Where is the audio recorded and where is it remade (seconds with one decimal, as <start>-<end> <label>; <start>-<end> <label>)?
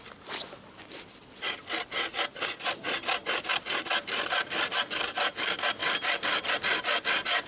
0.0-5.8 recorded; 5.8-6.5 remade; 6.5-7.5 recorded